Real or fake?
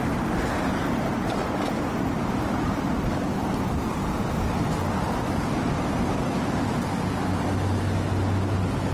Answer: real